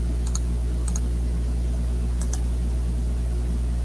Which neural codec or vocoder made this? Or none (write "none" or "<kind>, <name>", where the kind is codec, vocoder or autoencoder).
none